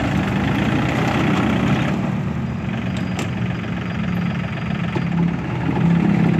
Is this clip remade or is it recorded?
recorded